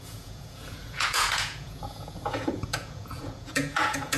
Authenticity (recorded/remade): remade